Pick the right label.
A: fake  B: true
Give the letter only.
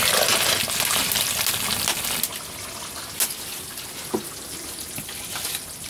B